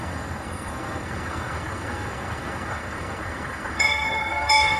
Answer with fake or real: fake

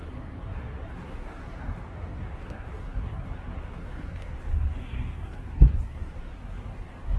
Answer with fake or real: fake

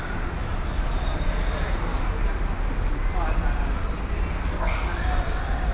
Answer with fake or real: real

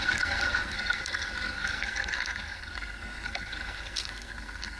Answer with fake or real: fake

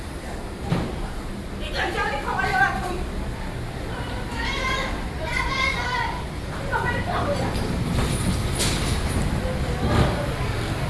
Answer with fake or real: real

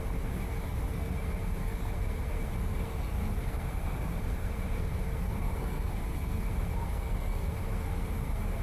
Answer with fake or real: fake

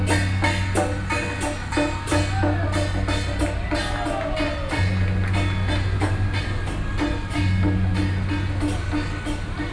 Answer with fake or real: real